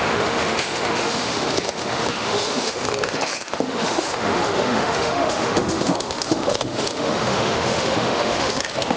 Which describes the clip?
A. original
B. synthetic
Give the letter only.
B